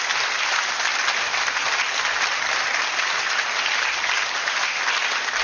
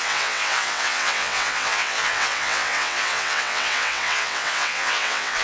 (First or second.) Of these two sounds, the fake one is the second